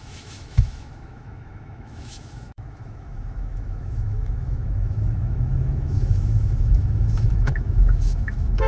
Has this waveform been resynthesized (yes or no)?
yes